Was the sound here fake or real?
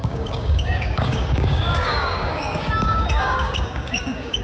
fake